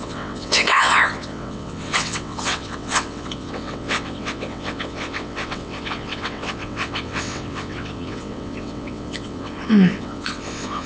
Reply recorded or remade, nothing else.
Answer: remade